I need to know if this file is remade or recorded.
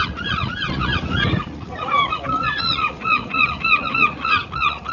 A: remade